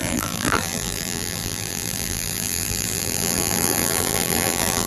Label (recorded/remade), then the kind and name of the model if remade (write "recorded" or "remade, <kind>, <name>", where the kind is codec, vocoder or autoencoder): remade, vocoder, BigVGAN v2